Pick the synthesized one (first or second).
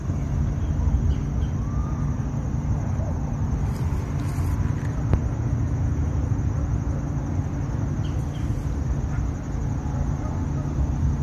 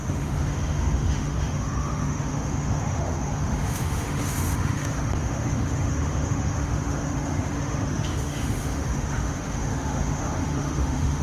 second